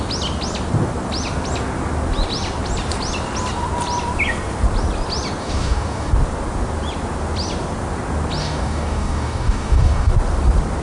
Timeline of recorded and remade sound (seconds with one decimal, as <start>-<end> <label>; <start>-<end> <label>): 0.0-5.4 recorded; 5.4-6.1 remade; 6.1-8.4 recorded; 8.4-10.1 remade; 10.1-10.8 recorded